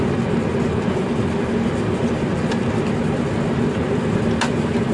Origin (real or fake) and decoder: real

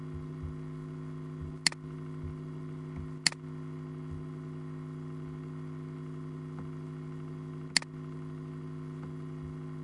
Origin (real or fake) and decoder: real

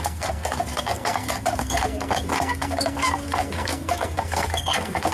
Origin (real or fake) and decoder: fake, codec, SNAC